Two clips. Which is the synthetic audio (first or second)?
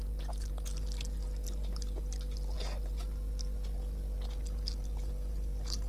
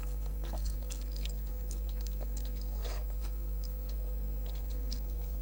second